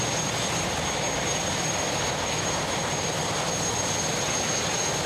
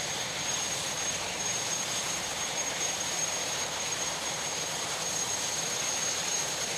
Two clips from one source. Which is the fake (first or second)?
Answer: second